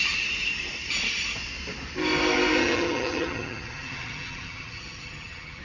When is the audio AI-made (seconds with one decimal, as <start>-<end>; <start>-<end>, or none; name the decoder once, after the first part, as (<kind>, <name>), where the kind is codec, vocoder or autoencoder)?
2.6-5.6 (vocoder, HiFi-GAN)